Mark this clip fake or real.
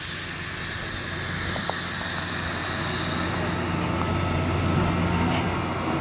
real